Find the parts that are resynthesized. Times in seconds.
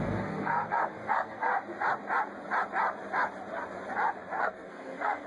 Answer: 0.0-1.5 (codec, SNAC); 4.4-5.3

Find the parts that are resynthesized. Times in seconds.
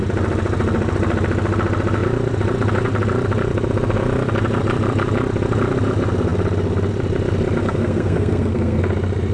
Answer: 7.6-8.8 (codec, SNAC)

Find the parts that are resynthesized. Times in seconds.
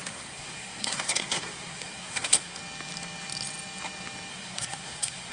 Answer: 0.0-2.6 (codec, SNAC); 4.3-5.3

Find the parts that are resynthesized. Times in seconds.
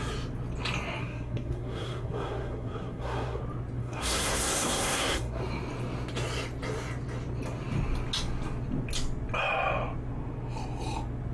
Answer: 1.0-3.4 (codec, SNAC); 3.8-5.4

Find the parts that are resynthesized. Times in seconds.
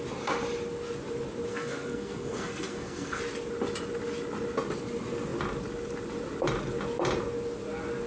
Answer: 1.5-3.2 (codec, SNAC)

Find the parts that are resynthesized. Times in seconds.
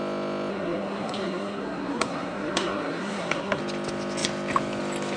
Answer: 0.5-3.6 (codec, SNAC)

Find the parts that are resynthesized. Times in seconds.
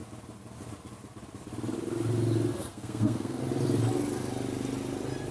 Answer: 2.7-3.4 (codec, SNAC)